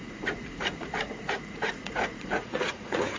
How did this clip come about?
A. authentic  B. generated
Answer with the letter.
B